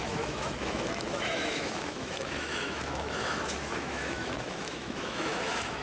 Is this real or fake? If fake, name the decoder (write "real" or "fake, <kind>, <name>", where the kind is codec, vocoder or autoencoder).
fake, autoencoder, DAC-VAE